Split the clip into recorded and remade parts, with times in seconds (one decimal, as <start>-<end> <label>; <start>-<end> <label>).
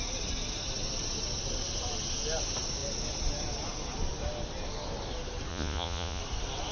0.0-5.5 recorded; 5.5-6.2 remade; 6.2-6.7 recorded